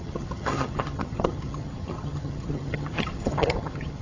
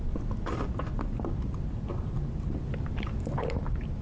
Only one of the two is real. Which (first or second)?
second